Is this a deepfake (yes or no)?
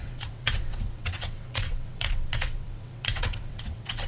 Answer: yes